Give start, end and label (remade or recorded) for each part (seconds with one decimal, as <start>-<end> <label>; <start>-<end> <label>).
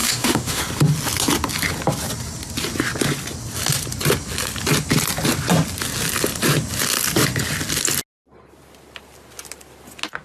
0.0-0.6 remade; 0.6-10.2 recorded